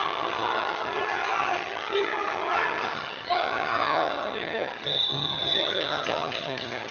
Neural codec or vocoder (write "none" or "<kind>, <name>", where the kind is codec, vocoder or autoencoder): vocoder, HiFi-GAN